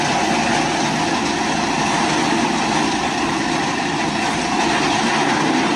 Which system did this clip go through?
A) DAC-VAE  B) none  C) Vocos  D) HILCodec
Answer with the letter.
B